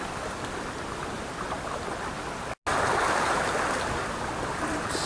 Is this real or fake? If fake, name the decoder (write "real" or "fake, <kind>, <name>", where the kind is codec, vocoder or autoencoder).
real